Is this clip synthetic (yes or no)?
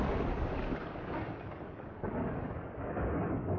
yes